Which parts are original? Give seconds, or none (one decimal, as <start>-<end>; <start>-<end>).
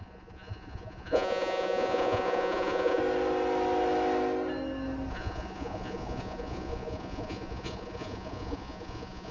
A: 3.0-5.1